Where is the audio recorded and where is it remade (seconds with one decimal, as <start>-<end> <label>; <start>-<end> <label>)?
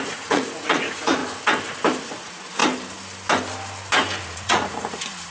0.0-1.2 remade; 1.2-2.0 recorded; 2.0-2.6 remade; 2.6-4.2 recorded; 4.2-5.3 remade